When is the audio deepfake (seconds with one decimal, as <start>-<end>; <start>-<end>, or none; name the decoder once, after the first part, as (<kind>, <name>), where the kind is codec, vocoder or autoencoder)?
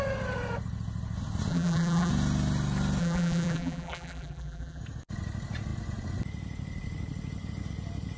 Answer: 1.5-2.1 (vocoder, BigVGAN v2); 3.0-4.8